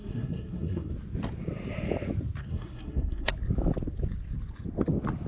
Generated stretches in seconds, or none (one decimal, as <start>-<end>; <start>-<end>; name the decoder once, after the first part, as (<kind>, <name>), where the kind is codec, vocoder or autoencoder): 0.0-0.9 (codec, SNAC); 2.4-3.3